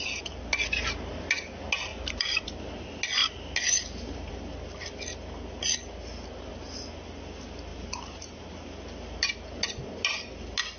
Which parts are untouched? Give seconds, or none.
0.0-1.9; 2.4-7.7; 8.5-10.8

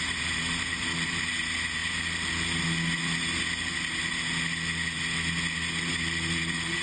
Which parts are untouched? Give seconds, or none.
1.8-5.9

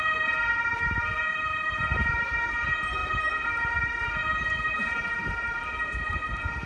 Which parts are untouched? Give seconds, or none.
0.0-1.5; 2.1-3.0; 3.7-4.2; 4.7-6.7

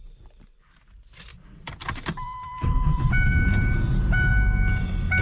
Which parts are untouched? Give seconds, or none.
0.0-1.3; 4.3-5.2

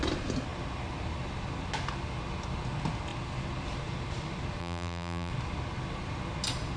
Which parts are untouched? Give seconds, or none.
0.0-4.6; 5.3-6.8